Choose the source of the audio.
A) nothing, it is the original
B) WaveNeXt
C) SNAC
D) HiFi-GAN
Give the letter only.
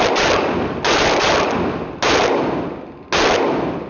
A